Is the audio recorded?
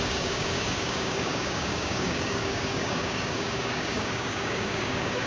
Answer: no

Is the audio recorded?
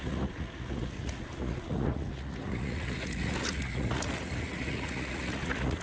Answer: no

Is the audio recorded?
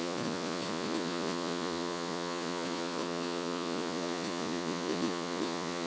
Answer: no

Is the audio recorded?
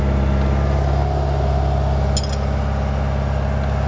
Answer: yes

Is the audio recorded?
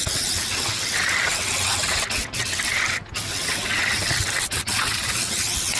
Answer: yes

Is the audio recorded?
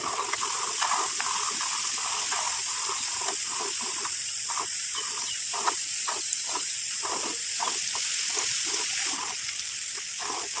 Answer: yes